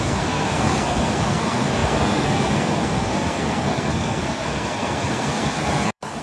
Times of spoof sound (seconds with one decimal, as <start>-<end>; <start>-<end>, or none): 0.0-6.2